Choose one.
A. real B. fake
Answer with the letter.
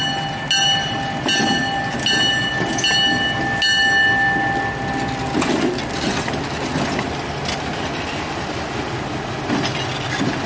A